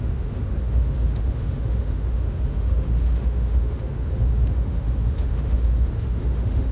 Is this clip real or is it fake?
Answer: fake